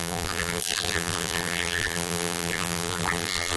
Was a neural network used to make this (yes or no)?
yes